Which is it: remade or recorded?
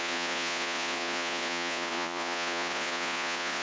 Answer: remade